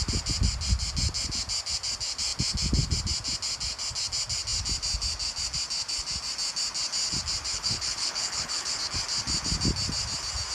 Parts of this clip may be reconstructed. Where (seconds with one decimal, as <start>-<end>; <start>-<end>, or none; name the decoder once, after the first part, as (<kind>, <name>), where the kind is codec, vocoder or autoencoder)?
7.5-8.7 (codec, HILCodec)